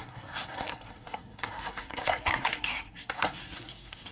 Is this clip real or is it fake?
fake